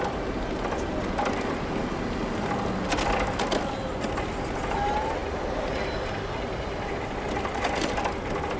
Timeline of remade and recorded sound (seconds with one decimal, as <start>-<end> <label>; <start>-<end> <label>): 0.0-8.6 recorded